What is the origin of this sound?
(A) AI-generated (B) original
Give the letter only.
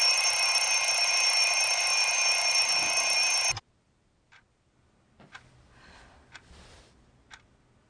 B